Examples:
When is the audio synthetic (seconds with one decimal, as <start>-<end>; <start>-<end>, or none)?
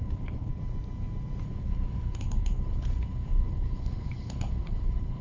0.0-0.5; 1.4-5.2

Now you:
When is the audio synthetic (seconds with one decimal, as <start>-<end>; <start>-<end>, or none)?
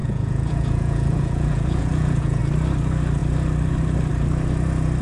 0.0-2.4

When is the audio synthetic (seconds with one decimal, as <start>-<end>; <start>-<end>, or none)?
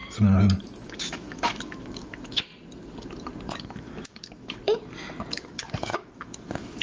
0.6-2.5; 3.5-4.6; 5.3-6.8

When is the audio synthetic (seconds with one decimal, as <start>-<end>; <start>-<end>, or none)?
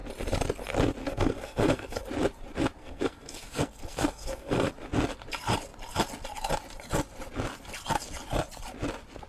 1.0-2.0; 2.8-4.7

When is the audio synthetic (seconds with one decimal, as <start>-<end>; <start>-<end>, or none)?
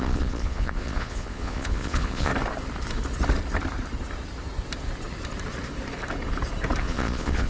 0.0-2.3; 6.8-7.5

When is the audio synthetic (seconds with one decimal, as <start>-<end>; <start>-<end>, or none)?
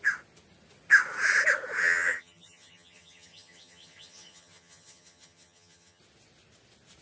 1.8-6.0